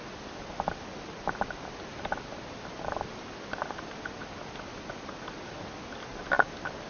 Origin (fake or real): real